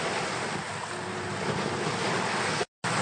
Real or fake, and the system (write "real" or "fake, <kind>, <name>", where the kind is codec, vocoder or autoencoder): real